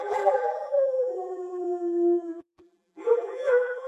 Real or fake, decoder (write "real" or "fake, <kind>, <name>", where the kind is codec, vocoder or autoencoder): fake, vocoder, BigVGAN v2